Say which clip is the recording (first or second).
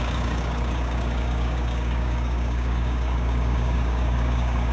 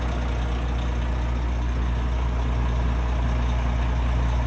second